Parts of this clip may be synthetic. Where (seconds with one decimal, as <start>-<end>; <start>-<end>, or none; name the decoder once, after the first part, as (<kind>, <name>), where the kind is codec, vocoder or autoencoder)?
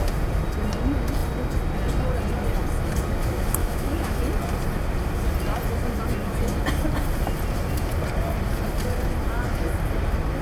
3.6-4.2 (autoencoder, DAC-VAE)